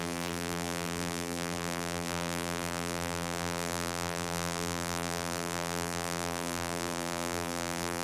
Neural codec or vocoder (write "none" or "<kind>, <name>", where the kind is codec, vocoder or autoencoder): vocoder, BigVGAN v2